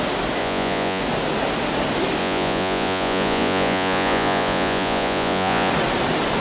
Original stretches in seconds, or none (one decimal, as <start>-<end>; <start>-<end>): 0.0-0.4; 1.0-2.2; 5.7-6.4